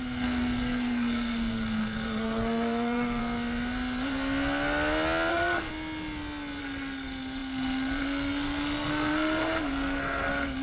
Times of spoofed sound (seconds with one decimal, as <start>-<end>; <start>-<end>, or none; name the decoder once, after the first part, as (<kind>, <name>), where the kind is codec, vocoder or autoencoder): 0.0-3.2 (codec, SNAC); 5.3-5.7; 6.6-10.6